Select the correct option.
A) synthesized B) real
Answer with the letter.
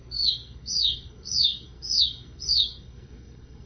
A